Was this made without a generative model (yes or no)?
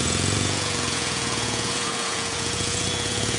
no